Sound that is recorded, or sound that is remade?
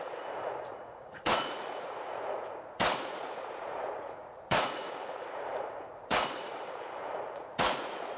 remade